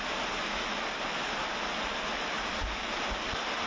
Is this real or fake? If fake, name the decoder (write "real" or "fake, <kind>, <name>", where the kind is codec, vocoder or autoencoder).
real